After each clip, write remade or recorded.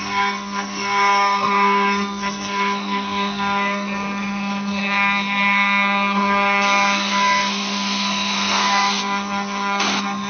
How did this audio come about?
remade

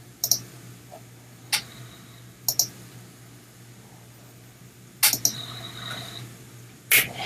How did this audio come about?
recorded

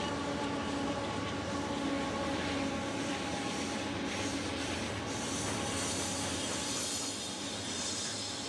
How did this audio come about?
recorded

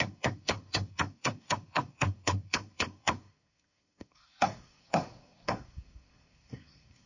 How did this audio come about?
remade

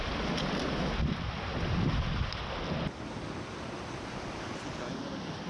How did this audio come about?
recorded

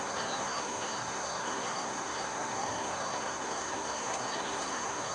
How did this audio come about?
remade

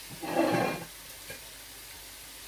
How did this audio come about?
recorded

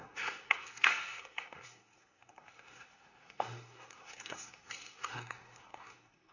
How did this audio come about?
remade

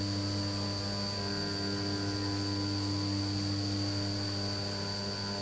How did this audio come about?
recorded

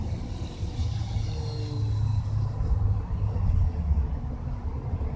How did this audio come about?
recorded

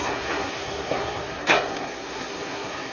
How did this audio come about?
remade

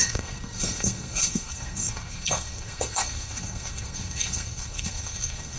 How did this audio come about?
remade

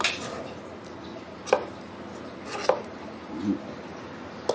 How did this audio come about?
recorded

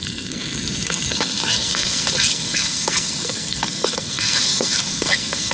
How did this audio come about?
remade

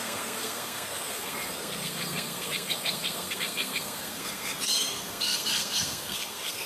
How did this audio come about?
remade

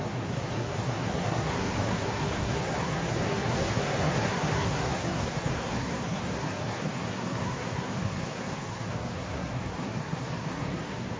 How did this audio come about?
remade